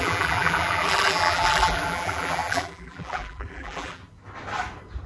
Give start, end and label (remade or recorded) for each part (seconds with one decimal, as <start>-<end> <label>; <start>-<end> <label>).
0.0-4.0 remade; 4.0-5.1 recorded